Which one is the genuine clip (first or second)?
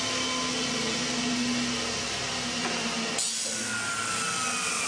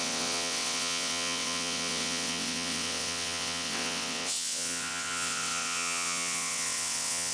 first